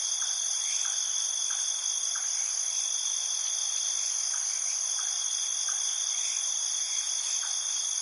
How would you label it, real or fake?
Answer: real